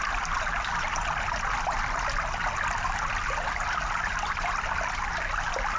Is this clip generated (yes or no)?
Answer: no